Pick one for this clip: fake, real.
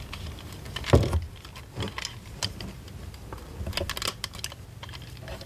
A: real